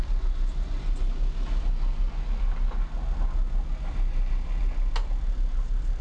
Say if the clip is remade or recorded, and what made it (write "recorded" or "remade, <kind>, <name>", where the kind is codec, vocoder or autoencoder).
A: recorded